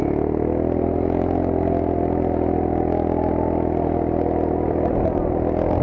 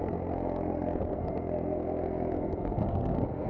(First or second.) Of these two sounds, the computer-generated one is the second